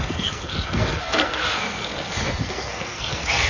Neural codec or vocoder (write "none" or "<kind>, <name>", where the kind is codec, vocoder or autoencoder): codec, SNAC